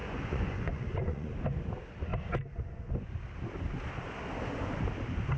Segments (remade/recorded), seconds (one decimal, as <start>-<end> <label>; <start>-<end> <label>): 0.0-1.3 remade; 1.3-5.4 recorded